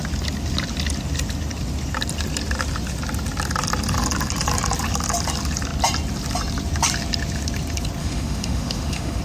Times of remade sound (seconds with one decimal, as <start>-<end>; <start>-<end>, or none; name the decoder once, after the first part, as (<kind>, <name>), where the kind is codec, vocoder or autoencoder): 8.0-9.2 (autoencoder, DAC-VAE)